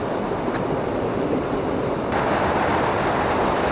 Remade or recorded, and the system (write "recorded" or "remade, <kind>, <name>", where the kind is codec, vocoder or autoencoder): recorded